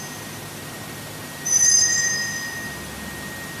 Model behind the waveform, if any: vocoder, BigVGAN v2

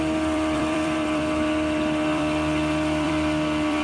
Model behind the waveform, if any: vocoder, BigVGAN v2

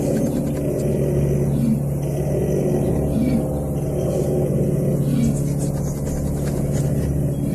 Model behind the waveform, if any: none